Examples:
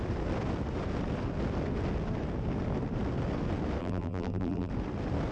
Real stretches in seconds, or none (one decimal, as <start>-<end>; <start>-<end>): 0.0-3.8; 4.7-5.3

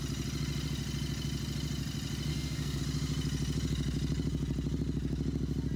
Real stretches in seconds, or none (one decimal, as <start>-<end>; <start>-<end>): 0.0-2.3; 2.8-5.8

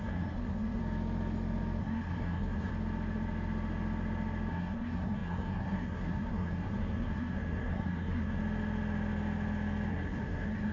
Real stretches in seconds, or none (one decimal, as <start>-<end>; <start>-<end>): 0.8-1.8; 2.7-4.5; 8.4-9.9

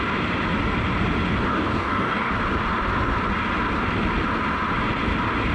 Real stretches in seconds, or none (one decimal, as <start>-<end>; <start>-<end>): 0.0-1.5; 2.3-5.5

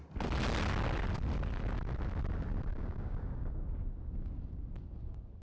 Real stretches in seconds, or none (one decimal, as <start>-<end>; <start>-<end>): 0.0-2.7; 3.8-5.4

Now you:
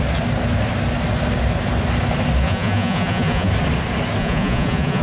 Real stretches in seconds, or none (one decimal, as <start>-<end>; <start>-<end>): 0.0-2.4; 3.5-4.2

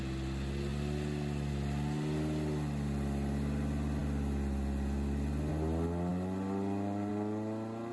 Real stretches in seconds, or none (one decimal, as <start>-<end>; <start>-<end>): 0.0-7.9